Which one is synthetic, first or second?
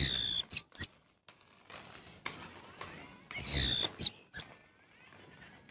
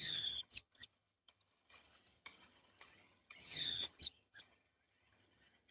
second